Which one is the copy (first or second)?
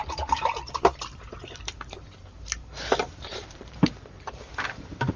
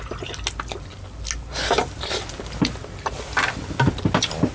first